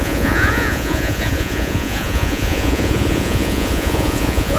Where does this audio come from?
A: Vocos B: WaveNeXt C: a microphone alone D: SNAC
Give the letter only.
A